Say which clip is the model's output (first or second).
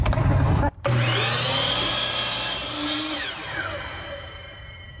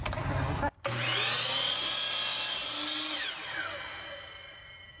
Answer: first